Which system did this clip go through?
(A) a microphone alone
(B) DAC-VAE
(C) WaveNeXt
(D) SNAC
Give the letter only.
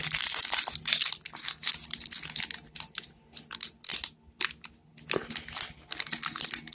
A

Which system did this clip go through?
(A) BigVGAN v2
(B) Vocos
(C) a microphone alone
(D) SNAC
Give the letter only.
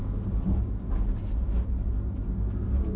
C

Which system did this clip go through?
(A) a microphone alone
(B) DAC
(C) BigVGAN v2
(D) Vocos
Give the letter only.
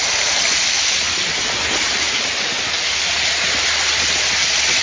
A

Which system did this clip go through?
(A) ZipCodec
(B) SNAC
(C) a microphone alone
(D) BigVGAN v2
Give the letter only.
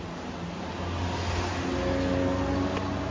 C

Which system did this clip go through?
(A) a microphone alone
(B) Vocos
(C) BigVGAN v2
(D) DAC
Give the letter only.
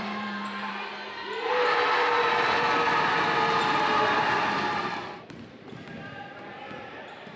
C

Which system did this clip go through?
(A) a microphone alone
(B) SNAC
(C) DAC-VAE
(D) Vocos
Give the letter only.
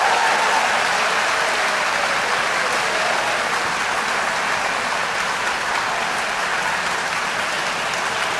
A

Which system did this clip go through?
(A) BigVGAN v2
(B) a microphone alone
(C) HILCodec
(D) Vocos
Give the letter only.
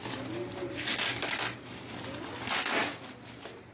B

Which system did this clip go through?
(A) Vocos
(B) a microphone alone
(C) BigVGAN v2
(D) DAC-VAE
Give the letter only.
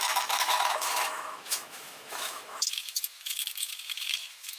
D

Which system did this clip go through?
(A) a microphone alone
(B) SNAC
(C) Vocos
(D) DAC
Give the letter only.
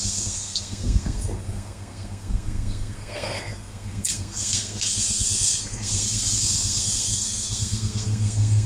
B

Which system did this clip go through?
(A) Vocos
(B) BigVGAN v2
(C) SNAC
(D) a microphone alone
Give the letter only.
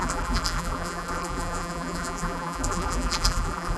B